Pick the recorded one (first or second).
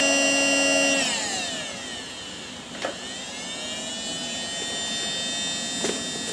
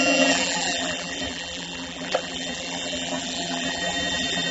first